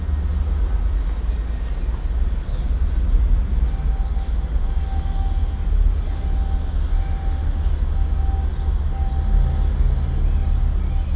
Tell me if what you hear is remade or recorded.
recorded